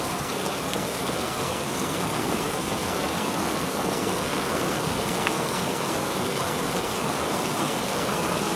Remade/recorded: remade